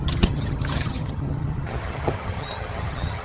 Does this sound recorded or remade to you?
remade